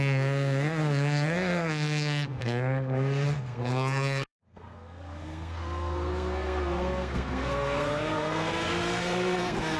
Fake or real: fake